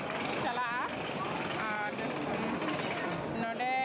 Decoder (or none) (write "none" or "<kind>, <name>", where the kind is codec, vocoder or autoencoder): none